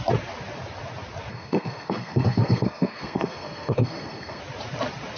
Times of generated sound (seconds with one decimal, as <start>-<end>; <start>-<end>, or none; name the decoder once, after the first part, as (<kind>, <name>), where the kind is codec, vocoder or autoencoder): 1.3-4.4 (codec, SNAC)

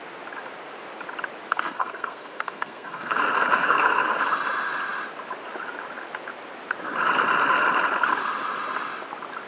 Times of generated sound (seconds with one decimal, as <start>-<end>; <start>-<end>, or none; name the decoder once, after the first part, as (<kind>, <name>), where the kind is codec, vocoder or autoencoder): 1.5-3.2 (codec, SNAC); 3.6-4.1